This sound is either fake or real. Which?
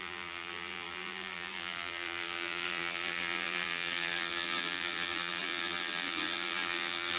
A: fake